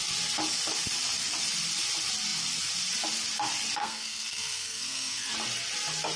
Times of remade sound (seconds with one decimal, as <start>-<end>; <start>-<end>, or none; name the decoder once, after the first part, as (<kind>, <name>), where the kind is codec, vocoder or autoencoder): 3.8-5.3 (codec, SNAC)